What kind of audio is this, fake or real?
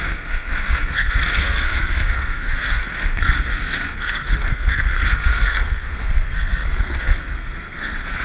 fake